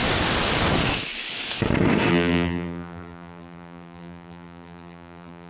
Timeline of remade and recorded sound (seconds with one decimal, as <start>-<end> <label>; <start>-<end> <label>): 0.0-2.1 recorded; 2.1-5.5 remade